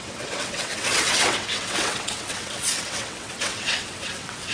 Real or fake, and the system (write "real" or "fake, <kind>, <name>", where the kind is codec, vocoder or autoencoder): fake, vocoder, WaveNeXt